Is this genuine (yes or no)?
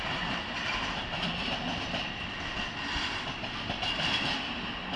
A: no